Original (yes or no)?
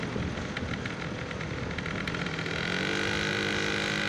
yes